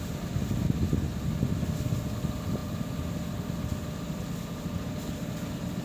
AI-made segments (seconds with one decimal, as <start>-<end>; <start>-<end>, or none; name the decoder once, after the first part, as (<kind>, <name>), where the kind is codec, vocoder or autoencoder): none